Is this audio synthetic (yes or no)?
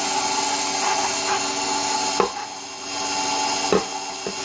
no